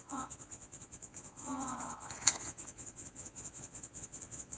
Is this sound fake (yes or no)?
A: yes